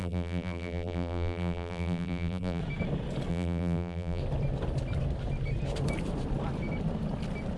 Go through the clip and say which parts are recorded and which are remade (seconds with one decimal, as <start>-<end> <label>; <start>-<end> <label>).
0.0-2.6 remade; 2.6-3.3 recorded; 3.3-4.2 remade; 4.2-7.6 recorded